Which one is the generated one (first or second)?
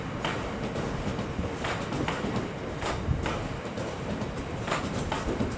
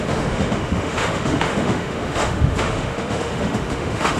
second